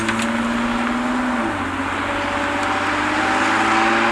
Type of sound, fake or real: real